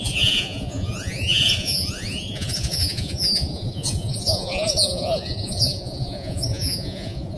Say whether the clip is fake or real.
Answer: fake